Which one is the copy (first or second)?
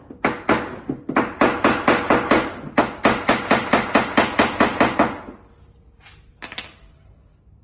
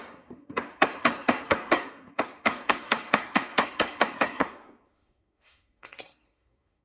second